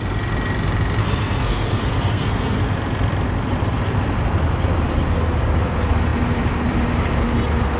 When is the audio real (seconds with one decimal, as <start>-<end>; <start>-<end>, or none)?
0.0-1.0; 2.6-7.8